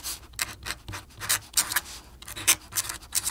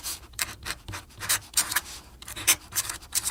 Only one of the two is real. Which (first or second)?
first